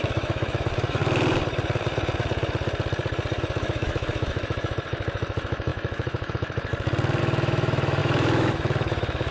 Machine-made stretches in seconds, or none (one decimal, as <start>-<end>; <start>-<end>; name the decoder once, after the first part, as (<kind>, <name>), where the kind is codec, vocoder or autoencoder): 0.0-1.0 (autoencoder, DAC-VAE); 3.4-6.7; 7.2-9.3